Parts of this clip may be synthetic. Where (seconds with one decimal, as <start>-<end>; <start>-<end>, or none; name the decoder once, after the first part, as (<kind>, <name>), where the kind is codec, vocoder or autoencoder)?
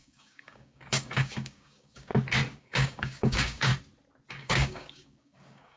0.0-2.1 (codec, DAC); 2.6-3.7; 4.3-5.8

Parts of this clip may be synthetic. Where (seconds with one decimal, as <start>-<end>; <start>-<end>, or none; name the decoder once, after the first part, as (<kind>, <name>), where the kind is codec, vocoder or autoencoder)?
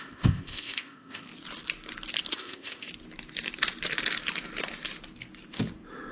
0.0-1.3 (codec, ZipCodec); 2.3-2.9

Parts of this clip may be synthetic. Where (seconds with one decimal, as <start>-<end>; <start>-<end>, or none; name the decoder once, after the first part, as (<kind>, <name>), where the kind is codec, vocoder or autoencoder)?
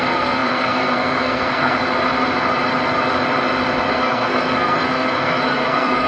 0.0-1.8 (codec, SNAC); 3.9-6.1